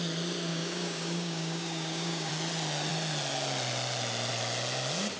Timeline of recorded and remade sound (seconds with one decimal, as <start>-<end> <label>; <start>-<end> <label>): 0.0-0.5 recorded; 0.5-2.3 remade; 2.3-5.2 recorded